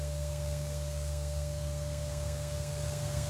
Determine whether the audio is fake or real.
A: fake